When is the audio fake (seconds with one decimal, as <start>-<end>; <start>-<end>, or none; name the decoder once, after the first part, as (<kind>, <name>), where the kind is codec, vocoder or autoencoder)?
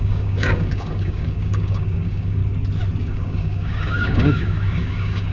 0.0-2.4 (codec, DAC); 3.0-5.3